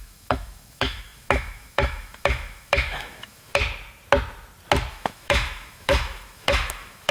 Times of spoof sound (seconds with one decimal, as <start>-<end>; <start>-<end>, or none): 0.0-3.6; 4.9-7.1